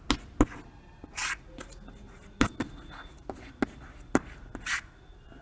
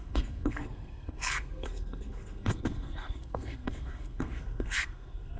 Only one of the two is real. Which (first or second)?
first